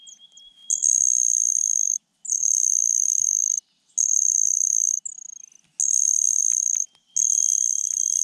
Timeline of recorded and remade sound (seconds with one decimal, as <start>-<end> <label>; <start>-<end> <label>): 0.0-8.2 recorded